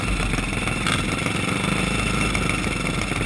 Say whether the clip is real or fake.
real